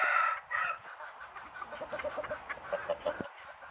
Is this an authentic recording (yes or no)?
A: no